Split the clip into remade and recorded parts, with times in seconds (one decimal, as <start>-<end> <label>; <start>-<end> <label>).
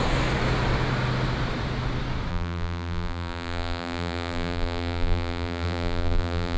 0.0-2.3 recorded; 2.3-6.6 remade